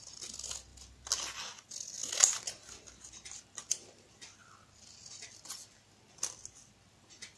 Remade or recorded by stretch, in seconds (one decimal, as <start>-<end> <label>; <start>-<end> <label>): 0.0-7.4 recorded